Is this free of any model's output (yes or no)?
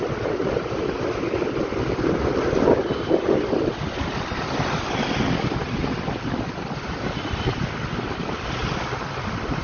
yes